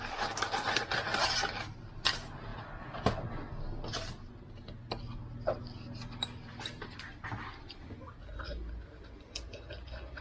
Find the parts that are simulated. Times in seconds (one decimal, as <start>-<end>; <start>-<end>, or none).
none